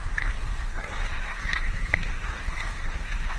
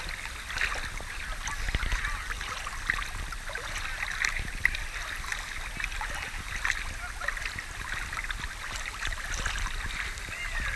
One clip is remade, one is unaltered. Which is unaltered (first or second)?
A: second